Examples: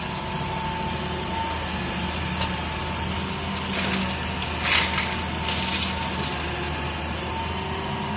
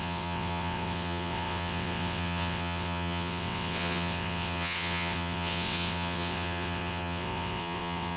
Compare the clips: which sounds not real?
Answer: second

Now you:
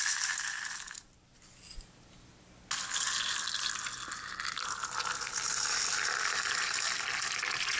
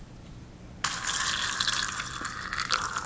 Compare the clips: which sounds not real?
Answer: second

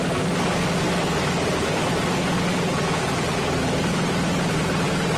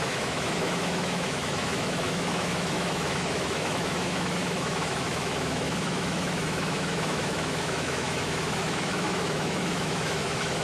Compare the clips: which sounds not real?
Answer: second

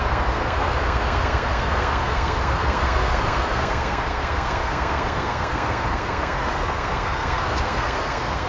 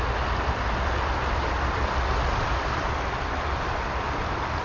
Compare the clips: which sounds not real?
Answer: first